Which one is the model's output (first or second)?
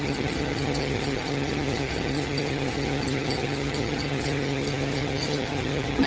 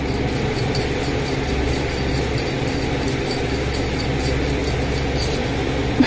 first